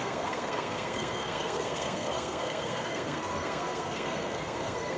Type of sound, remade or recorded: remade